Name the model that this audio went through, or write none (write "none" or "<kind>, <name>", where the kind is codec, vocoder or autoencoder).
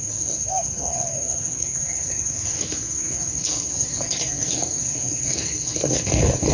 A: codec, SNAC